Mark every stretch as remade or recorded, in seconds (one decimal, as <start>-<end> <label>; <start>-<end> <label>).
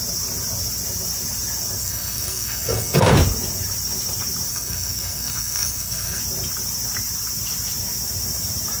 0.0-1.8 recorded; 1.8-3.1 remade; 3.1-4.5 recorded; 4.5-6.2 remade; 6.2-8.8 recorded